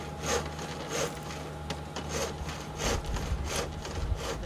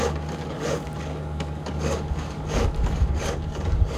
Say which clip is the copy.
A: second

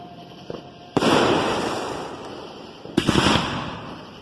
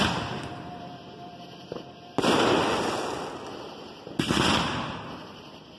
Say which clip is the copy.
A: first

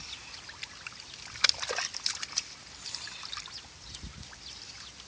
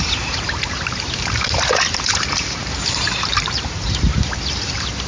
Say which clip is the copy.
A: second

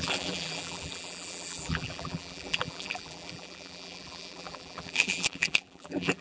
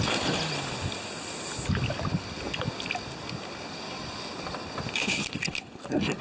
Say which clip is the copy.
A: first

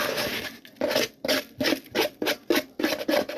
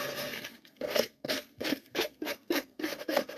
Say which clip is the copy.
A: second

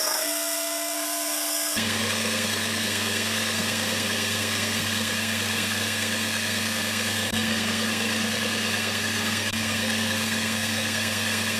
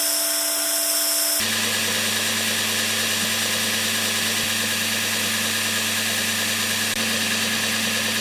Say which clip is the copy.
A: first